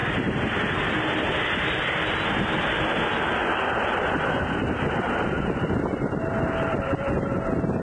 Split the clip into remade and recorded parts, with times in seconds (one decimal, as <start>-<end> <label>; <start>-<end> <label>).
0.0-3.4 recorded; 3.4-7.8 remade